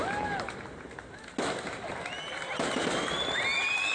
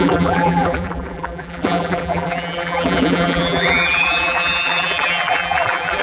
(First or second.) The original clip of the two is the first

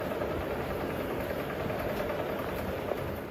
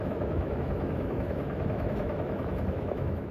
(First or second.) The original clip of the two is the first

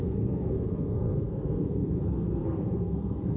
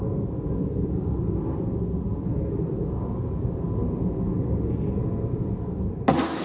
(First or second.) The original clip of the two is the second